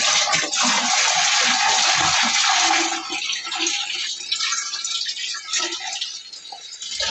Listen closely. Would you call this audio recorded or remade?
recorded